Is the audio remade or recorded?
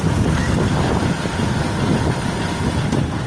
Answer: recorded